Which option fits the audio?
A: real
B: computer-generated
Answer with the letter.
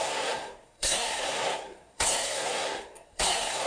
B